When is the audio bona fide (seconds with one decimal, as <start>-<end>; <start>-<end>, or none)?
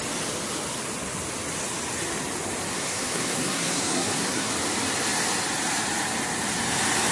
0.0-2.7; 4.5-7.1